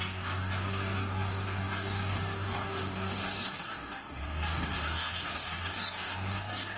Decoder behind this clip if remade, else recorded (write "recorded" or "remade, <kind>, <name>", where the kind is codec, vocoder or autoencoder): remade, codec, DAC